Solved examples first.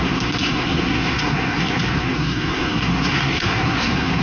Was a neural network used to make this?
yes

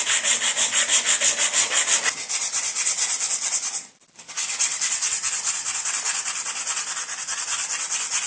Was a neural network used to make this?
yes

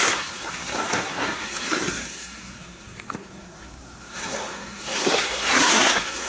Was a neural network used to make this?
yes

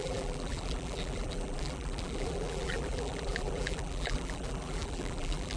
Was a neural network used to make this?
yes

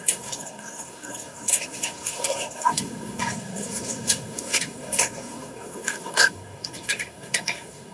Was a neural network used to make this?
yes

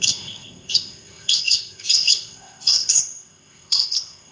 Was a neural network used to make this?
yes